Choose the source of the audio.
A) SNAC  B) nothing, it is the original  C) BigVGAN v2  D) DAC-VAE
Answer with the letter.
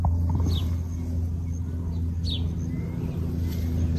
B